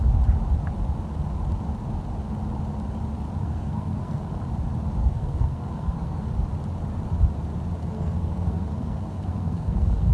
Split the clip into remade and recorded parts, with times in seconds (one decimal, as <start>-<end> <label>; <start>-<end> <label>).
0.0-3.4 recorded; 3.4-4.3 remade; 4.3-5.0 recorded; 5.0-6.3 remade; 6.3-7.8 recorded; 7.8-10.1 remade